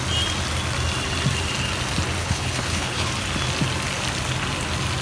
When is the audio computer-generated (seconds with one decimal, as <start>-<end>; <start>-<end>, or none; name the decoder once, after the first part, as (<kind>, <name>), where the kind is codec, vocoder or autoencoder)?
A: 2.2-3.1 (codec, HILCodec)